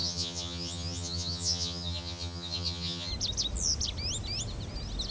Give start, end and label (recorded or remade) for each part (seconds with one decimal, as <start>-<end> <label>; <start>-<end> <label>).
0.0-3.1 remade; 3.1-5.1 recorded